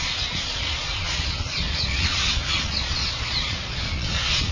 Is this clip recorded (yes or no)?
no